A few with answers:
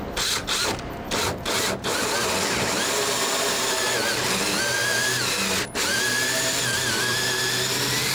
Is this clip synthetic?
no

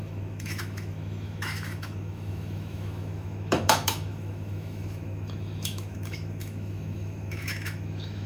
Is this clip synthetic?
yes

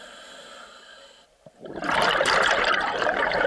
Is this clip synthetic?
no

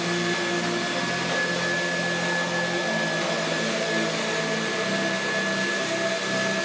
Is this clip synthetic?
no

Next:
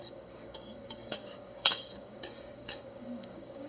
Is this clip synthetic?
yes